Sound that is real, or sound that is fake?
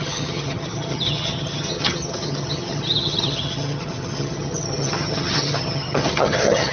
fake